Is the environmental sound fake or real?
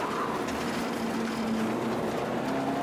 real